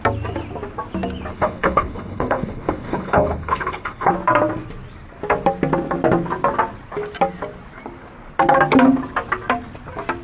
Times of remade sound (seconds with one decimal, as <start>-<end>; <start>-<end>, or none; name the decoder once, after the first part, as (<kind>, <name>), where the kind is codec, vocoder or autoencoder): 1.3-4.1 (codec, HILCodec)